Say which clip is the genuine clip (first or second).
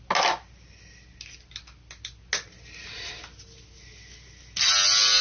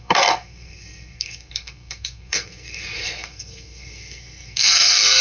first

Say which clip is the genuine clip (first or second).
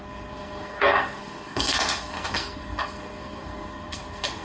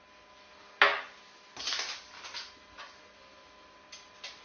second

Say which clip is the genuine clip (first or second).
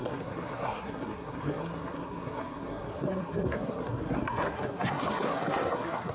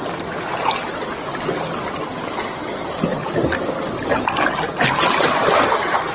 second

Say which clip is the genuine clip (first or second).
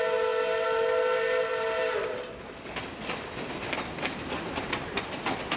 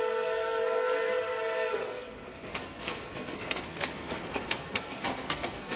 first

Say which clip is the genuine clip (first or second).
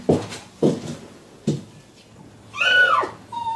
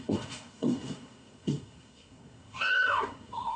first